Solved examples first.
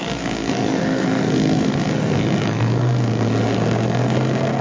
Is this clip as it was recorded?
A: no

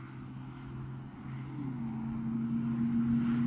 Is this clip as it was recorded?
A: yes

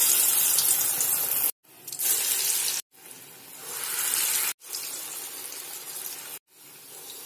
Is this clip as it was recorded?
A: yes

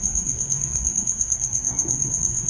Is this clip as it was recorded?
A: no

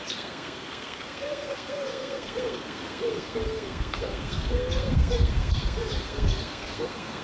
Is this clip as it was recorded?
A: no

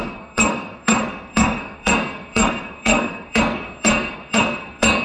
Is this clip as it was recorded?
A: no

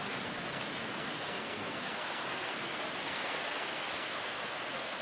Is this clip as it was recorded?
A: no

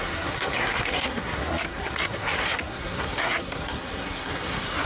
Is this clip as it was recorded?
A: no